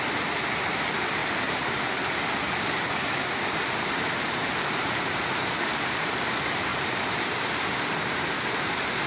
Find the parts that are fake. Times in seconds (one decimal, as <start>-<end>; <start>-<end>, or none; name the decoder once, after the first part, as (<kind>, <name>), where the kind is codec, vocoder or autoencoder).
1.2-6.1 (vocoder, BigVGAN v2); 6.7-8.3